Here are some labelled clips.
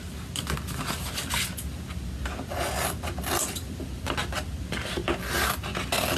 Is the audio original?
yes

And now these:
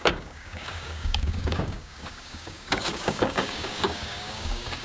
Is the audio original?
no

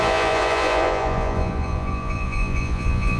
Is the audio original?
no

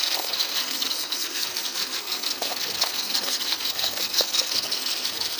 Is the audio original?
no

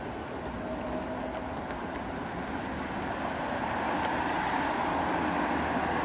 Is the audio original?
yes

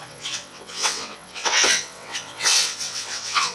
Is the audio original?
no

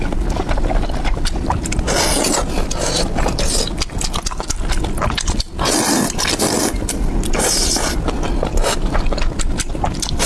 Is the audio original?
yes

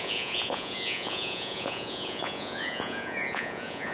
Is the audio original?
no